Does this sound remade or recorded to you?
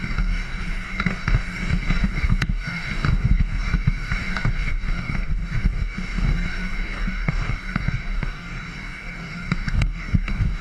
remade